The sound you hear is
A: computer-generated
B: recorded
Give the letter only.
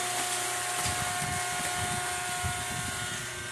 B